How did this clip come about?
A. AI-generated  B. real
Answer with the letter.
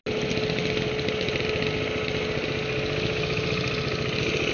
B